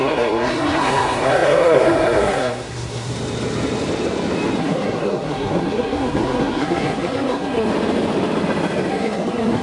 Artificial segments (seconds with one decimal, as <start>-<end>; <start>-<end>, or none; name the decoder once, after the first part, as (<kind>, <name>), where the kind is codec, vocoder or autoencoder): 0.0-3.1 (codec, SNAC); 4.6-7.7; 8.9-9.6